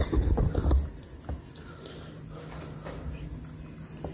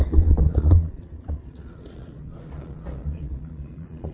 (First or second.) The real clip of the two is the first